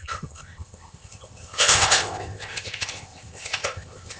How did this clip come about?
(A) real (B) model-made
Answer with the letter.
B